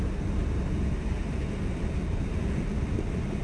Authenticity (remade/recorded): recorded